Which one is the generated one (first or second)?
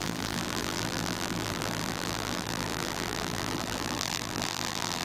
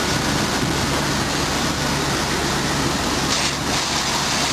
first